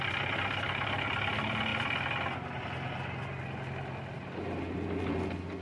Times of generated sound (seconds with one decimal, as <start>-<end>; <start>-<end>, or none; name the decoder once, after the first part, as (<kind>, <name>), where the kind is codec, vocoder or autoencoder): none